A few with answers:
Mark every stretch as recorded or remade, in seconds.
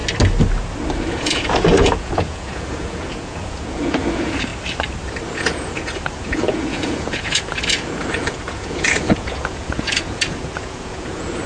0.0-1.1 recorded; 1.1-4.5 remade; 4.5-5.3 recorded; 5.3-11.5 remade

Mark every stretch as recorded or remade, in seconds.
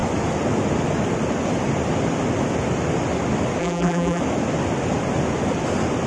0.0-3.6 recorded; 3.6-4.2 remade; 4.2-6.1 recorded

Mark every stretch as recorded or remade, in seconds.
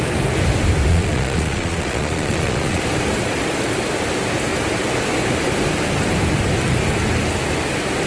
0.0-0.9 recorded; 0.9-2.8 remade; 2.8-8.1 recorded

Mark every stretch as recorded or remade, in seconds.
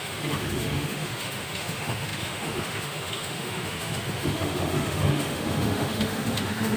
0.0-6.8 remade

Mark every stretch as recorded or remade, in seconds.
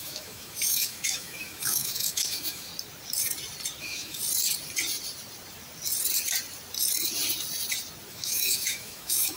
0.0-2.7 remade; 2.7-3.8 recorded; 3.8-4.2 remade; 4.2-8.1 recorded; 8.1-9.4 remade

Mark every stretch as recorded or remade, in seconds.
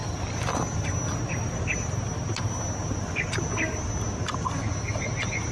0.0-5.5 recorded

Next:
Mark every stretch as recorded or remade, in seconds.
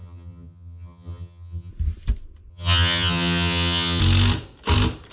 0.0-1.7 remade; 1.7-2.5 recorded; 2.5-4.0 remade; 4.0-5.1 recorded